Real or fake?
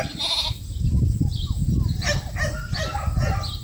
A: real